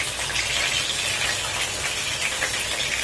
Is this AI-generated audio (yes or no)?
no